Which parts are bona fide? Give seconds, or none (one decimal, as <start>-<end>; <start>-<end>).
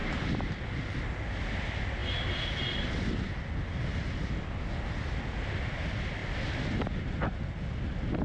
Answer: 0.0-8.2